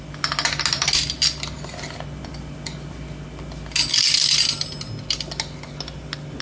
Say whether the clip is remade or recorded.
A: recorded